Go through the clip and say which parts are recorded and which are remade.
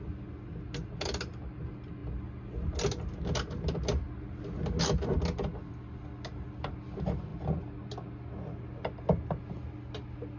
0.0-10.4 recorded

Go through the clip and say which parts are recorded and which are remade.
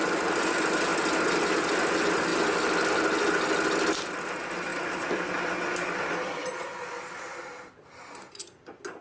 0.0-4.7 recorded; 4.7-5.3 remade; 5.3-6.4 recorded; 6.4-8.0 remade; 8.0-9.0 recorded